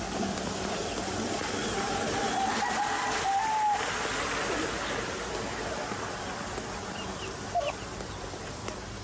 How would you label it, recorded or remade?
recorded